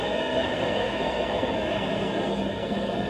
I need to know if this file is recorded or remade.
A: remade